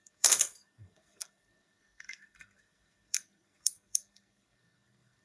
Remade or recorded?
remade